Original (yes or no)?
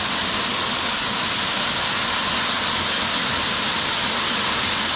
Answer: yes